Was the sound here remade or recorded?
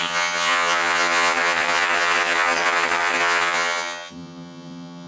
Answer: remade